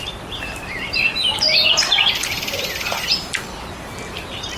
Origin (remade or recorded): recorded